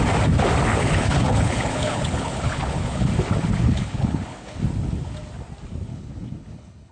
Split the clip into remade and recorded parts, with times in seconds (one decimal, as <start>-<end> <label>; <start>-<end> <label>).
0.0-0.7 recorded; 0.7-3.1 remade; 3.1-3.6 recorded; 3.6-4.6 remade; 4.6-5.9 recorded; 5.9-6.9 remade